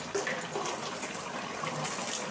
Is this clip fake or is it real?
real